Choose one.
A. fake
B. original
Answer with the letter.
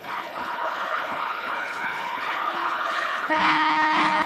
A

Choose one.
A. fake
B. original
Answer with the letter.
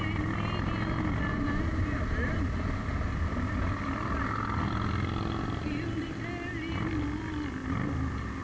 B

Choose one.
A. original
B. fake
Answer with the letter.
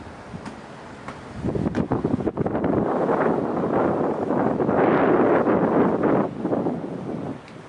A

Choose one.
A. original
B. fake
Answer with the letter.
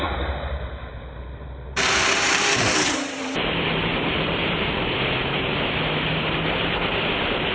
B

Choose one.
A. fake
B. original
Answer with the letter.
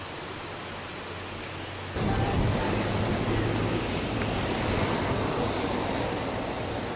B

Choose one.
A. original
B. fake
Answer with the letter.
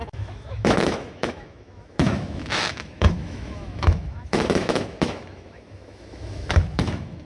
B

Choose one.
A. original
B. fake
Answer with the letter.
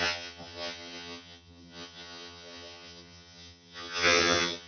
B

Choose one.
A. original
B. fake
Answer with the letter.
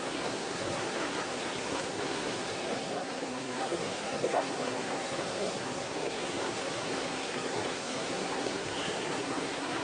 B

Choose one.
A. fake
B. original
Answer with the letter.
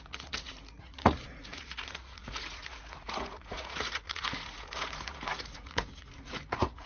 A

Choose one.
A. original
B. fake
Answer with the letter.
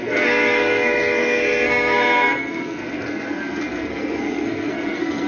B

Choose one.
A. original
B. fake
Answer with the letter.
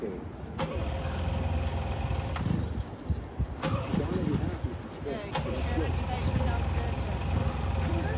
A